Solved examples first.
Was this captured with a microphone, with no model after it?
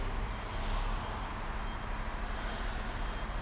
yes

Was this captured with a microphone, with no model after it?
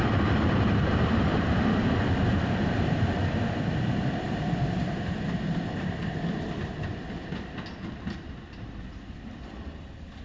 no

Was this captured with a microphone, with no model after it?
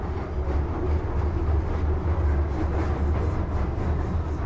yes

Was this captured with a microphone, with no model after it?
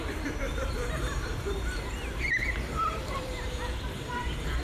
no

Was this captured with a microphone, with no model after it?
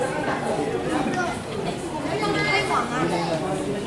yes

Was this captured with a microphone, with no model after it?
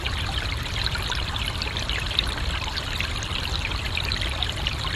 no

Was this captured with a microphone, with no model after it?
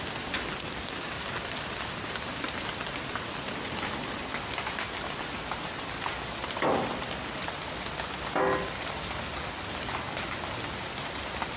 yes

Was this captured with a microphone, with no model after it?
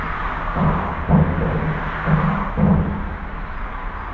yes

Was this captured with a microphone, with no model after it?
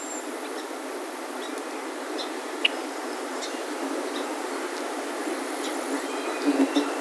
yes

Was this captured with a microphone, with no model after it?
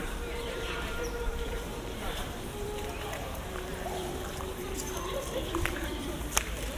no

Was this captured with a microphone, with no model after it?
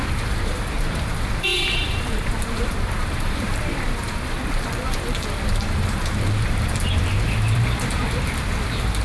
no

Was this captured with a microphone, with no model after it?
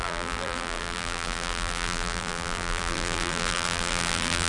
no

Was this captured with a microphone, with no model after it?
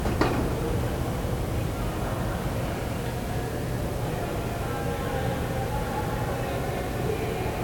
yes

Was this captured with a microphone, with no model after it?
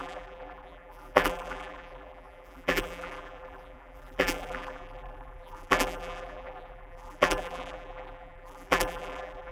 no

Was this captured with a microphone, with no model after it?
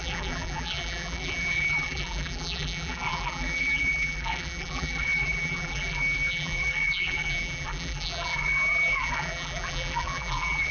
no